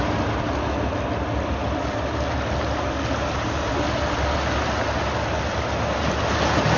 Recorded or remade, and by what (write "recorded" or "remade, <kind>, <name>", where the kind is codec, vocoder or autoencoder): recorded